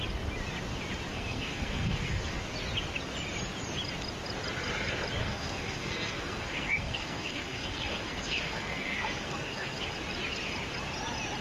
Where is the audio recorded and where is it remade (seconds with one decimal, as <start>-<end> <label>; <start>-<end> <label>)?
0.0-1.1 recorded; 1.1-2.4 remade; 2.4-5.2 recorded; 5.2-9.9 remade; 9.9-11.4 recorded

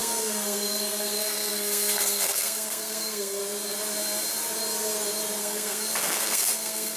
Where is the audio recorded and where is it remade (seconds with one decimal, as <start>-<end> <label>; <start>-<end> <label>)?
0.0-3.4 remade; 3.4-5.4 recorded; 5.4-7.0 remade

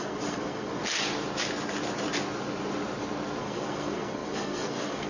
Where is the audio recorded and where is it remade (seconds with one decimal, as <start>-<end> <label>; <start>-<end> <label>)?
0.0-0.8 remade; 0.8-3.4 recorded; 3.4-5.1 remade

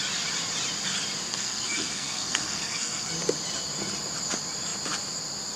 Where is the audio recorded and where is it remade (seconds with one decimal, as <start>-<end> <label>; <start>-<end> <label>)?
0.0-1.3 recorded; 1.3-3.1 remade; 3.1-5.6 recorded

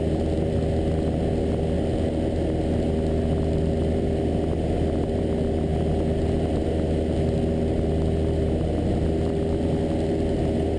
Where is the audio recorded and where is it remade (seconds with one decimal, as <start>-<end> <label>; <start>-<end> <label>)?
0.0-10.8 recorded

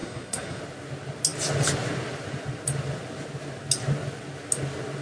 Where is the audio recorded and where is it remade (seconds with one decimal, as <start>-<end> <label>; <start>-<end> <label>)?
0.0-0.6 remade; 0.6-5.0 recorded